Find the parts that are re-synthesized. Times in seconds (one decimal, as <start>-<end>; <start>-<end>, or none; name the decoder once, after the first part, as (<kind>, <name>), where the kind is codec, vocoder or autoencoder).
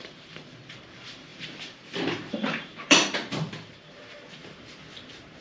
0.0-4.4 (vocoder, BigVGAN v2); 5.0-5.4